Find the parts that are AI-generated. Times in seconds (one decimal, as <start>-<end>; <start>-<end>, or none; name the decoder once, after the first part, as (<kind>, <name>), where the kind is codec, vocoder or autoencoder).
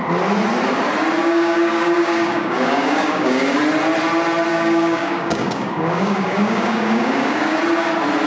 1.2-3.6 (codec, DAC); 4.5-7.6